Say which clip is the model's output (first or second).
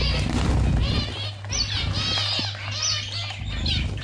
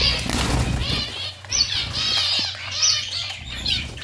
second